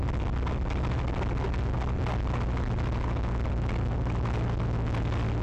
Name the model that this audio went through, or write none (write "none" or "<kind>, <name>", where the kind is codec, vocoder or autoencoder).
none